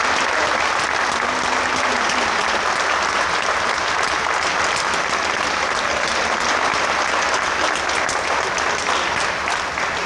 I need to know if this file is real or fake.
real